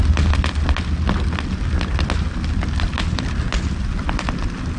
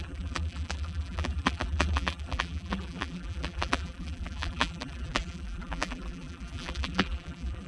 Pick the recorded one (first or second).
first